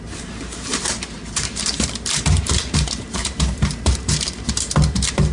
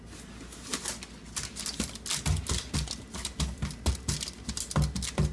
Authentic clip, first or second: second